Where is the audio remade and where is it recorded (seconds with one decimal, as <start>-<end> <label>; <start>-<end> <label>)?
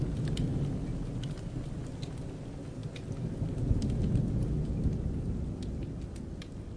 0.0-6.8 recorded